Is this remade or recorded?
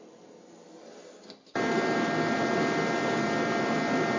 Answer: recorded